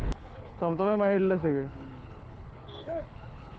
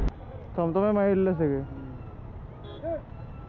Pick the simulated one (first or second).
first